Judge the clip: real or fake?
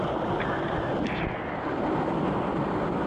real